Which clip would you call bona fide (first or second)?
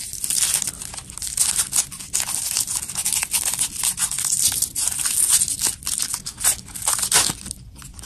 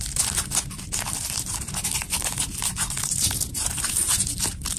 first